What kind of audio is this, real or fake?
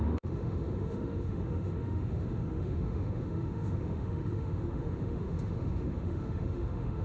fake